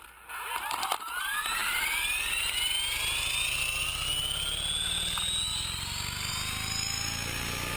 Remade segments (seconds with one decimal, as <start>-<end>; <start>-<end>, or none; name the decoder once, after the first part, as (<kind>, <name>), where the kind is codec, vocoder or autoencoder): none